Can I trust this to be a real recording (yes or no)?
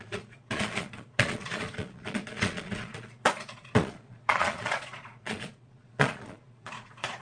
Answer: no